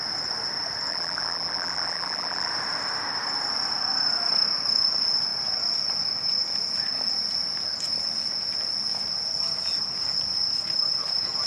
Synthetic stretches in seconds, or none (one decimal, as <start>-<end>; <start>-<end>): 0.9-2.5